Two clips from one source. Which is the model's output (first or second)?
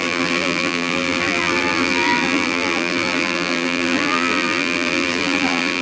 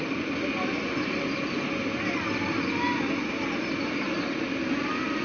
first